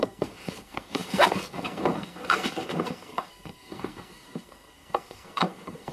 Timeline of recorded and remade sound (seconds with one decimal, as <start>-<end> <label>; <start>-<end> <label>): 0.0-5.9 remade